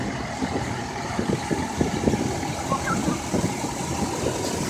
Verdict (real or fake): real